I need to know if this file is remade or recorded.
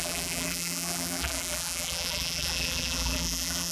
remade